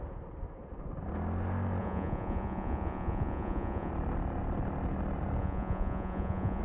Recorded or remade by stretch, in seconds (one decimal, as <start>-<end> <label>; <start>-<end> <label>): 0.0-1.8 recorded; 1.8-3.9 remade; 3.9-5.4 recorded; 5.4-6.6 remade